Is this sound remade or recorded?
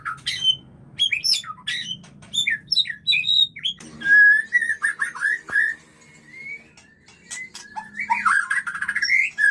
recorded